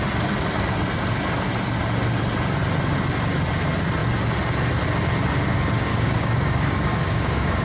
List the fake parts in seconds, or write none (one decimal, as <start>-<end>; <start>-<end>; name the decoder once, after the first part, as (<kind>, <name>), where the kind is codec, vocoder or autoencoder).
5.9-7.6 (codec, DAC)